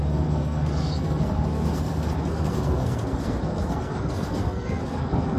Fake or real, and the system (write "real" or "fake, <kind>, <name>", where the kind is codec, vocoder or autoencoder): fake, codec, SNAC